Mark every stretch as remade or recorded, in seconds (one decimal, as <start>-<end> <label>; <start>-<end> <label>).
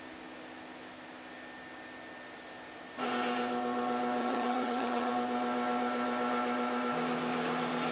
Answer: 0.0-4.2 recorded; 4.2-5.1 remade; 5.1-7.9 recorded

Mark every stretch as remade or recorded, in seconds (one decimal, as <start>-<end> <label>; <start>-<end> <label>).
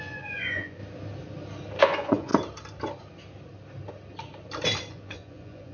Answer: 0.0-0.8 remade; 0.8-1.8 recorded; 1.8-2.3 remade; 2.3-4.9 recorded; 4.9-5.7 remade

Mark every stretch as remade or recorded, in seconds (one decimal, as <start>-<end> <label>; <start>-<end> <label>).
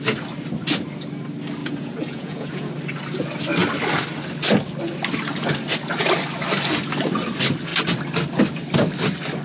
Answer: 0.0-1.6 recorded; 1.6-2.7 remade; 2.7-9.4 recorded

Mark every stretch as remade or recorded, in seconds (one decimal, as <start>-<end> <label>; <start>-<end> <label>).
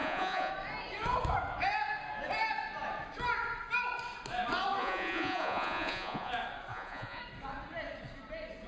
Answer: 0.0-0.5 remade; 0.5-4.8 recorded; 4.8-6.3 remade; 6.3-6.7 recorded; 6.7-7.2 remade; 7.2-8.7 recorded